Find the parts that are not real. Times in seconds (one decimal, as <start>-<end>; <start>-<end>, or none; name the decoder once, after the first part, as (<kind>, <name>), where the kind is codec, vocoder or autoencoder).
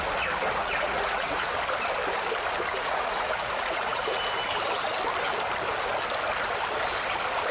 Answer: 0.6-1.5 (vocoder, Vocos); 2.7-4.2